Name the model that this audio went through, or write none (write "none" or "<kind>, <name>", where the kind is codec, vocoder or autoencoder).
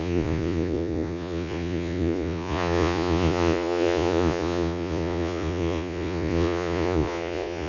vocoder, Vocos